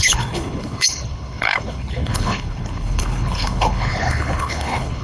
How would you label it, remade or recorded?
remade